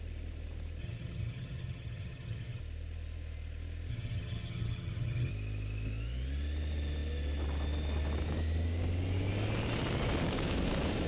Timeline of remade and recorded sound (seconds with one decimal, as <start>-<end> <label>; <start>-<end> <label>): 0.0-0.8 recorded; 0.8-2.6 remade; 2.6-3.9 recorded; 3.9-5.3 remade; 5.3-11.1 recorded

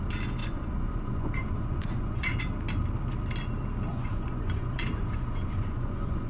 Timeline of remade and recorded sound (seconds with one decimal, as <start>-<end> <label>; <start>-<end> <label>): 0.0-0.4 recorded; 0.4-2.3 remade; 2.3-3.9 recorded; 3.9-6.3 remade